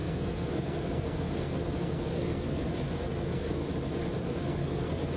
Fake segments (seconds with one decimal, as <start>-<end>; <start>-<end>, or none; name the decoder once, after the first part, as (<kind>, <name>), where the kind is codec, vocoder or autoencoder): 0.0-3.6 (codec, SNAC); 4.2-5.2